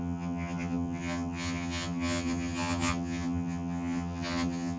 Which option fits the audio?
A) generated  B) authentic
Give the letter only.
A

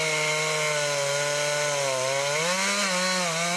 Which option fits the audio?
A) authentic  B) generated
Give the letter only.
A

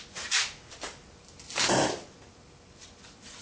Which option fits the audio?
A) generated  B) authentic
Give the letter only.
B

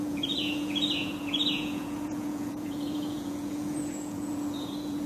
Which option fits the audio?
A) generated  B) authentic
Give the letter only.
A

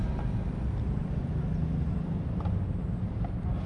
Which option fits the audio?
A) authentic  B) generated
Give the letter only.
A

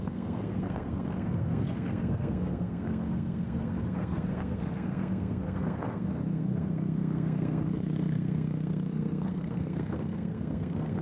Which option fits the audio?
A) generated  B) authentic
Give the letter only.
A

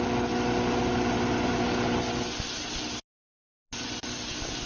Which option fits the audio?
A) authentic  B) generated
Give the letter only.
A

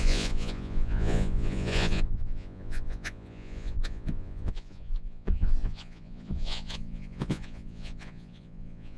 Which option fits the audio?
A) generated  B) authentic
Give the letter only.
A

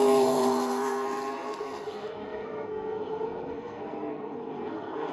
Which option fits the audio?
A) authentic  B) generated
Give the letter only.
B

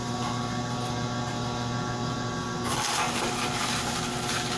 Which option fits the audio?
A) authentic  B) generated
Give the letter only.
A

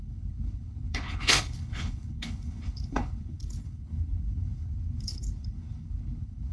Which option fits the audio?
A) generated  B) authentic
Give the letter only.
A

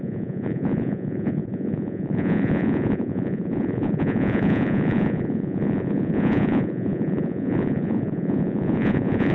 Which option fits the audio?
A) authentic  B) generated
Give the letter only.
B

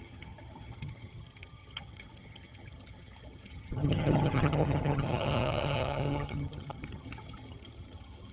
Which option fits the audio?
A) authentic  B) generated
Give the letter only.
B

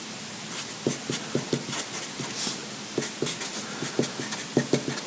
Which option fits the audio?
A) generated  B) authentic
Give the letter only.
B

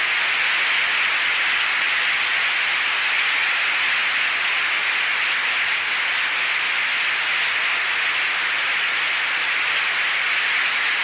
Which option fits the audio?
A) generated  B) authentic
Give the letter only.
B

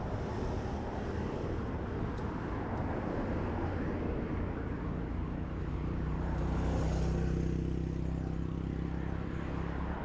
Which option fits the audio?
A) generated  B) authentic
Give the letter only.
B